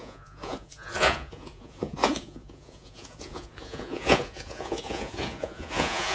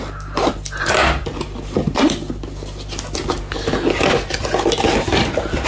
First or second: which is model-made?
first